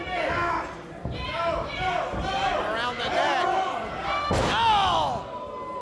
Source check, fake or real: real